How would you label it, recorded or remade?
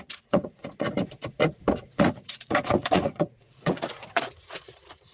remade